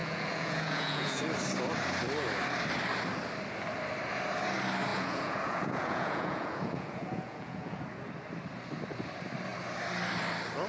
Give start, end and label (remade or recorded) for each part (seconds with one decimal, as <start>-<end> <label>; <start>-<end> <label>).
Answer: 0.0-1.2 remade; 1.2-4.9 recorded; 4.9-7.8 remade; 7.8-10.7 recorded

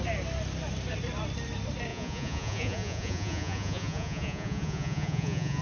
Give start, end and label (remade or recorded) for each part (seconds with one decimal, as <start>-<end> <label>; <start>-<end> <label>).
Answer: 0.0-1.9 recorded; 1.9-5.6 remade

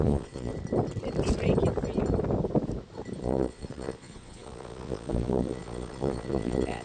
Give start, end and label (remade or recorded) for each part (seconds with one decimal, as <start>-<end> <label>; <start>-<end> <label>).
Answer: 0.0-0.5 remade; 0.5-3.2 recorded; 3.2-6.8 remade

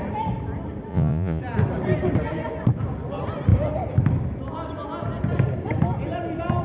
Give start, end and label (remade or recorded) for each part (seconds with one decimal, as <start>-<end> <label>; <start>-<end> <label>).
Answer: 0.0-0.9 recorded; 0.9-1.4 remade; 1.4-6.6 recorded

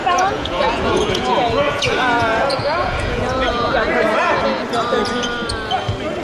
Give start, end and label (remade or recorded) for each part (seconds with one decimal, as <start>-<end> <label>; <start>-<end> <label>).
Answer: 0.0-3.7 remade; 3.7-6.2 recorded